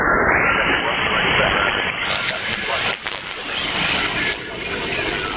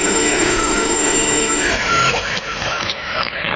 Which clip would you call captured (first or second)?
first